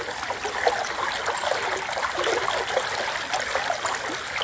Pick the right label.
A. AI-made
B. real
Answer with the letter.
B